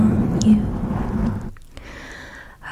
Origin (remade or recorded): recorded